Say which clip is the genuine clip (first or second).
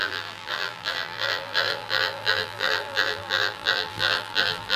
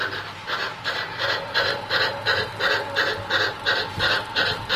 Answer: second